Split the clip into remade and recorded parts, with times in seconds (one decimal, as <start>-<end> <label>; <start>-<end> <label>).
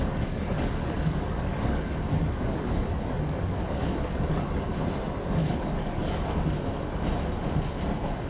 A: 0.0-4.7 remade; 4.7-5.4 recorded; 5.4-6.1 remade; 6.1-8.3 recorded